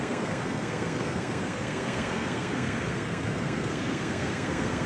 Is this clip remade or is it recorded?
remade